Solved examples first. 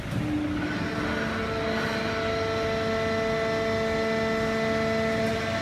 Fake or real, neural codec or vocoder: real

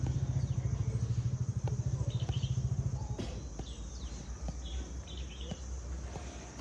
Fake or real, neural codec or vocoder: real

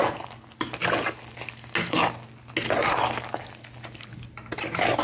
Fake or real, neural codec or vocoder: real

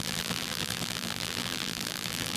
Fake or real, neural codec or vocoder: fake, vocoder, BigVGAN v2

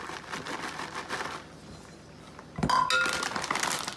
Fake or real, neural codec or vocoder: real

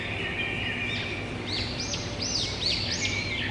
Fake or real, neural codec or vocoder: real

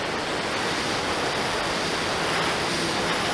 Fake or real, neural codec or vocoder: real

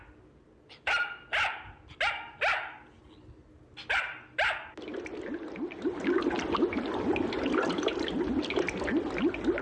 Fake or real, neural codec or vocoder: real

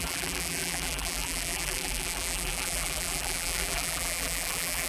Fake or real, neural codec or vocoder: fake, vocoder, BigVGAN v2